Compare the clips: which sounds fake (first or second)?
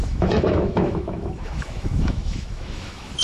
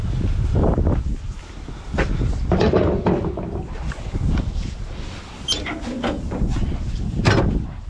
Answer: first